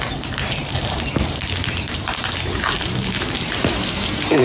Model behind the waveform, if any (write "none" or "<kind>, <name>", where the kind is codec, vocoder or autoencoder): vocoder, BigVGAN v2